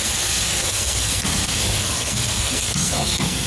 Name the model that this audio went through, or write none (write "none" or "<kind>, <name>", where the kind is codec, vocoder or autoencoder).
codec, SNAC